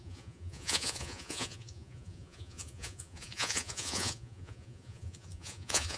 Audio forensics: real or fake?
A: fake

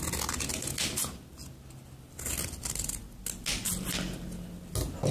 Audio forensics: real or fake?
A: real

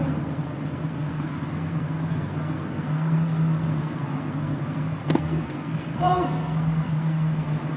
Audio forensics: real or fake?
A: fake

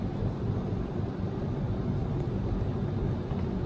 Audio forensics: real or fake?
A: real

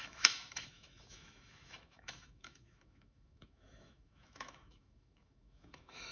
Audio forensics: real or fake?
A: fake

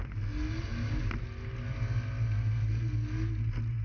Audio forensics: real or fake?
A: real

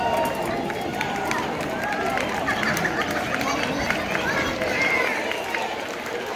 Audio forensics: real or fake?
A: fake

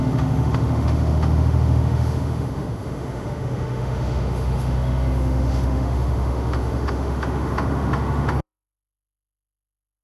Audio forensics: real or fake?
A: fake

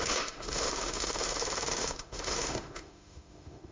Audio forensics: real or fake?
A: fake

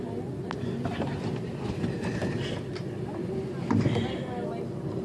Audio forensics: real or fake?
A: real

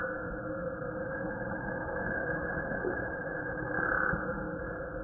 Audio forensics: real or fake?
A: real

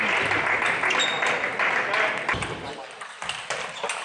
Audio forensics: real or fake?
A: real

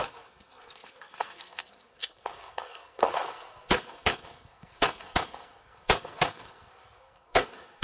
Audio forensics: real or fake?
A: fake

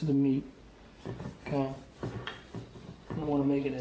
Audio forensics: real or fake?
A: fake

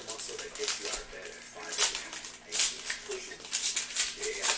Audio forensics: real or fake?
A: real